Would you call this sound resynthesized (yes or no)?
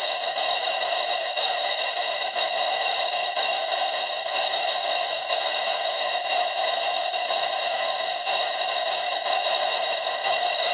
yes